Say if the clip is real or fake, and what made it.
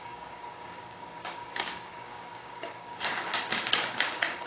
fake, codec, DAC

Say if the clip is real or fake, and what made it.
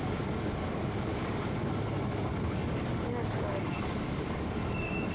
fake, codec, DAC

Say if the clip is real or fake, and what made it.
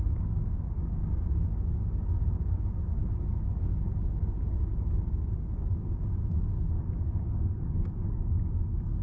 fake, codec, DAC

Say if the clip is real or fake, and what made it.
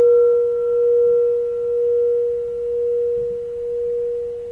real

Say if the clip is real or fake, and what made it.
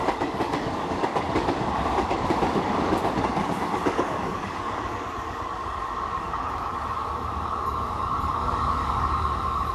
fake, codec, DAC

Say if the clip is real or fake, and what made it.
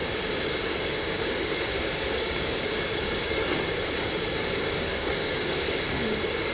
fake, codec, DAC